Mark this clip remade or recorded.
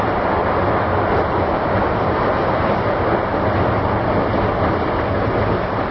recorded